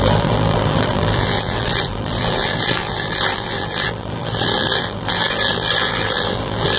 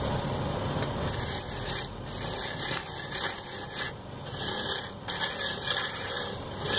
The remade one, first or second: first